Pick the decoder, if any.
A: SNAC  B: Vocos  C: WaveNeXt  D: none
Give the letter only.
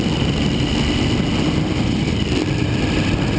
D